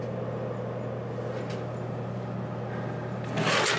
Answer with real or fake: real